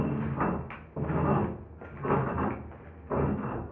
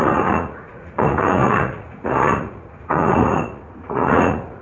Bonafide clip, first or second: first